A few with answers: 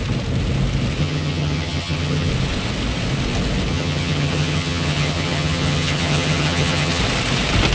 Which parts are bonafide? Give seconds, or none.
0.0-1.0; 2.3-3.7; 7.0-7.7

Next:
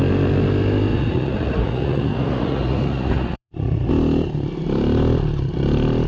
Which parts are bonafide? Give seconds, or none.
0.0-0.9; 3.9-6.1